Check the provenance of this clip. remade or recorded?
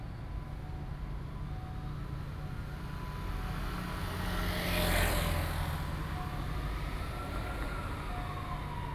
recorded